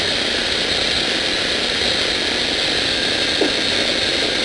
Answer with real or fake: real